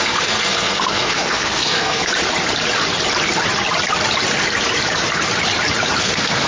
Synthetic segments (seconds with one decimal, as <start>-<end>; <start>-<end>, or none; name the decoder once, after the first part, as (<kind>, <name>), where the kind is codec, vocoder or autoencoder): 0.0-2.1 (codec, SNAC); 6.0-6.5